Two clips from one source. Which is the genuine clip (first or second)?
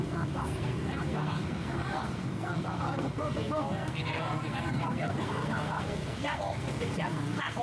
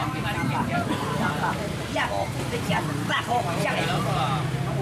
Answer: second